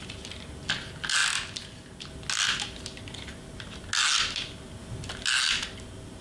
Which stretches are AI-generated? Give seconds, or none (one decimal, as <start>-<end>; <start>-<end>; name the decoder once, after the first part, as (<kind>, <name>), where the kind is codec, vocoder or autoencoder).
none